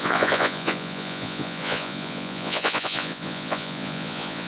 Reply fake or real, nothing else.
fake